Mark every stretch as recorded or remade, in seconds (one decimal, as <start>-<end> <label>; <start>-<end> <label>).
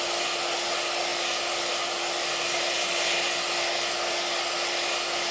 0.0-5.3 recorded